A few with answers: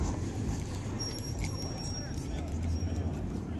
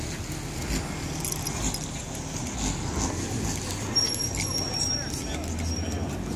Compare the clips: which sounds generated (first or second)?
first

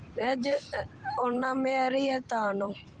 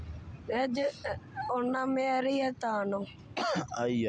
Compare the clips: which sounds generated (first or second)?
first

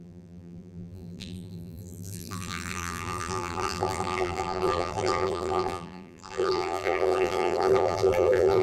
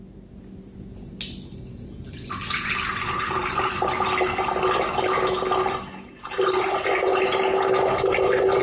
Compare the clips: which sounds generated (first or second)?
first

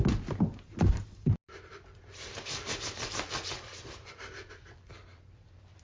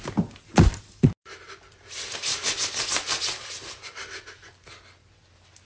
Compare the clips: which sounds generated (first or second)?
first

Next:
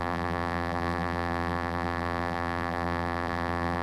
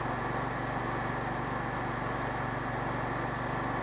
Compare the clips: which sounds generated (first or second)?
first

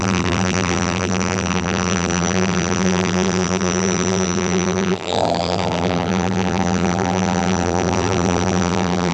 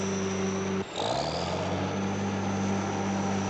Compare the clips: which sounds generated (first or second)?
first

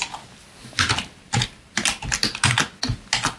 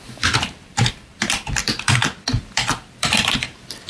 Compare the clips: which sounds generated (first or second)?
second